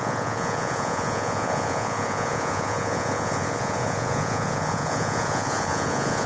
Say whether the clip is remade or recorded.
remade